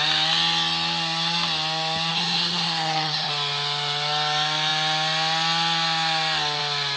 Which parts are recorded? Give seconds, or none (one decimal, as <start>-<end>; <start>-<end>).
0.0-2.1; 3.3-7.0